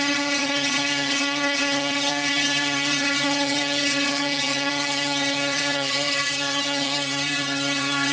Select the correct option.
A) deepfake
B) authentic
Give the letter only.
A